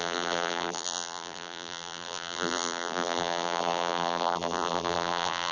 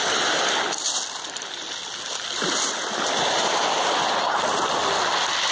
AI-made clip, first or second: first